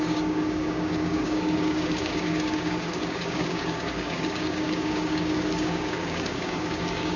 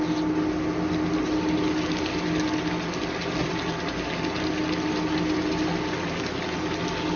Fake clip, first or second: first